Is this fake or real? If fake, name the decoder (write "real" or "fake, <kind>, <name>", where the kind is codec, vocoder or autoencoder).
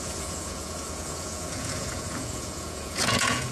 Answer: fake, vocoder, Vocos